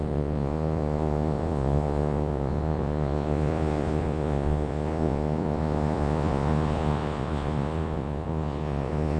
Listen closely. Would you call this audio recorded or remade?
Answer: remade